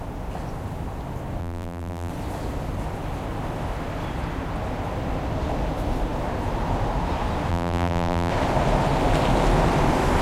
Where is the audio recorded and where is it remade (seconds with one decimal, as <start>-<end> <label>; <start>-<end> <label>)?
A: 0.0-1.4 recorded; 1.4-2.1 remade; 2.1-7.5 recorded; 7.5-8.3 remade; 8.3-10.2 recorded